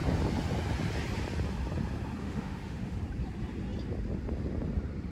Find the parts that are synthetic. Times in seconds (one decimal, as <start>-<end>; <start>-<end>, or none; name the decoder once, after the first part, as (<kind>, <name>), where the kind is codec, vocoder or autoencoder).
2.2-3.0 (autoencoder, DAC-VAE)